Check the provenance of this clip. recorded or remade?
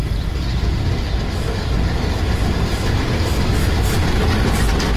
recorded